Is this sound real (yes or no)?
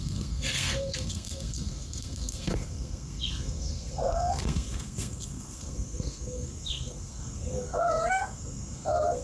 no